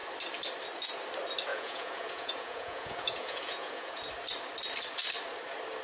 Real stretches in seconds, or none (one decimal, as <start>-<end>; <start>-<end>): 0.0-1.5; 4.1-5.8